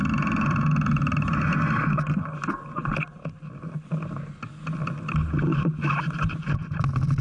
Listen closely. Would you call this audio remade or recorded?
recorded